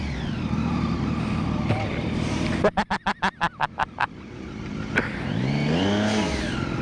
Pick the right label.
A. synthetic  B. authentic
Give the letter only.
B